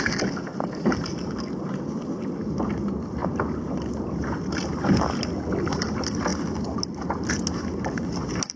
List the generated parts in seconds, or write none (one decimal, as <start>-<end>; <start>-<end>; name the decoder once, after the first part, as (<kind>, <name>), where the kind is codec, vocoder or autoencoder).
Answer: 4.7-5.2 (vocoder, BigVGAN v2)